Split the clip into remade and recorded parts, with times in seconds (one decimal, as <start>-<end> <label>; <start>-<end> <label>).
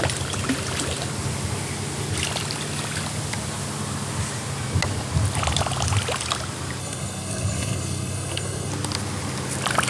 0.0-6.8 recorded; 6.8-8.7 remade; 8.7-9.9 recorded